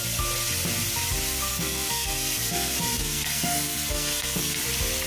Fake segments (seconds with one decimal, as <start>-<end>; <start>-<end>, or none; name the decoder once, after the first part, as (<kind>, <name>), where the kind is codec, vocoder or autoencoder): 1.5-4.6 (codec, SNAC)